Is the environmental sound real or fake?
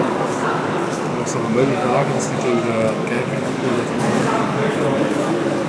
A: fake